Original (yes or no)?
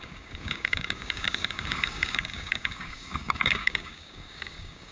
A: no